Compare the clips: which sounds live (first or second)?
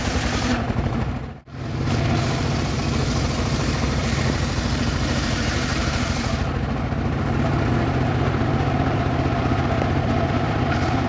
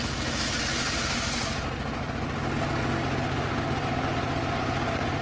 second